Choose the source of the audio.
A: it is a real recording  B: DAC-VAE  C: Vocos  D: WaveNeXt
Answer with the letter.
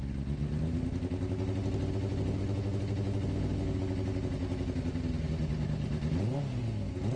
A